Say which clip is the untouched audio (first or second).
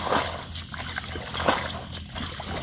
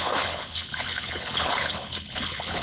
first